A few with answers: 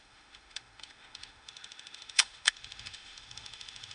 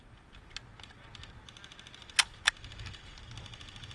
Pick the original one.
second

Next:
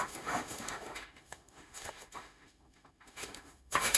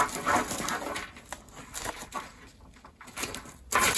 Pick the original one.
second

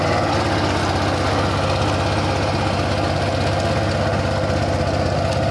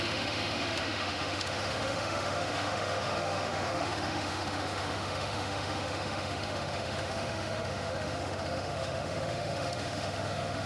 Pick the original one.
first